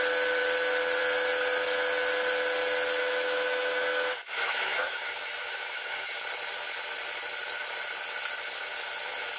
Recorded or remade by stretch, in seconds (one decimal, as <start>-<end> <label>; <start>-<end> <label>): 0.0-3.0 recorded; 3.0-6.2 remade; 6.2-9.4 recorded